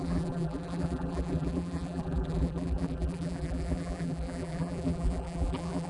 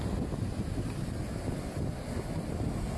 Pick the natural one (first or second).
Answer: second